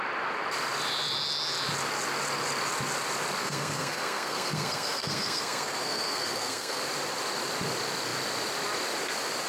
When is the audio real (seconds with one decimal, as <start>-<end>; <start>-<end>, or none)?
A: 0.0-3.4; 6.8-9.5